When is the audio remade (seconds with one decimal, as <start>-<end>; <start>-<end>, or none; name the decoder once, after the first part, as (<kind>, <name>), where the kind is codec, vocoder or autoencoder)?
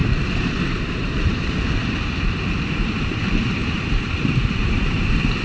0.0-3.2 (vocoder, BigVGAN v2); 3.6-5.4